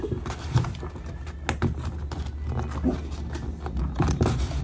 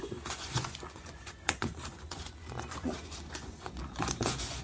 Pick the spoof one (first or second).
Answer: second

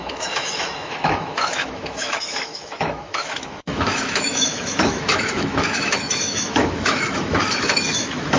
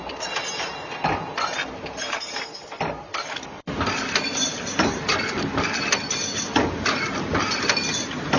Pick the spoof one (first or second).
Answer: first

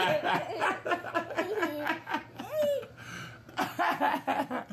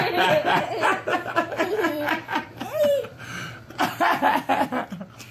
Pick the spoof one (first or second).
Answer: second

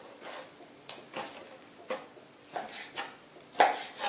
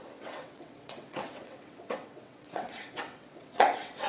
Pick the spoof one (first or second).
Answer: second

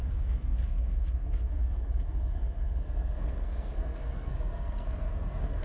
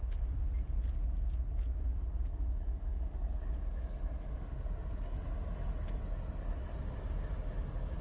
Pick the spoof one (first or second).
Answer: first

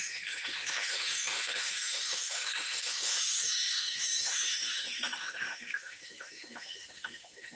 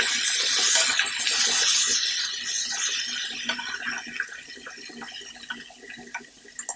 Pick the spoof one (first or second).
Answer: first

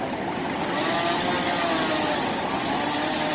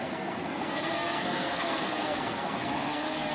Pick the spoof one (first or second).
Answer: second